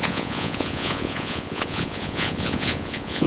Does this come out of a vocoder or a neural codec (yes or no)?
yes